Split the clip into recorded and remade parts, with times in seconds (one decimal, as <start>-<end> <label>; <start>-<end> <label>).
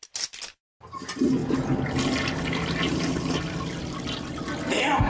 0.0-5.1 recorded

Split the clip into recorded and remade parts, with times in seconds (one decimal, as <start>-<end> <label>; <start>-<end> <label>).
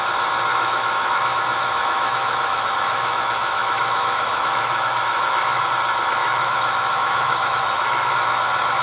0.0-0.5 recorded; 0.5-5.6 remade; 5.6-6.2 recorded; 6.2-8.1 remade; 8.1-8.8 recorded